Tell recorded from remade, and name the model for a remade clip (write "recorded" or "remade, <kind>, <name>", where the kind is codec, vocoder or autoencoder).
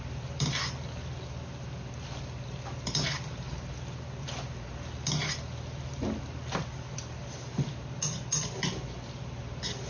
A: recorded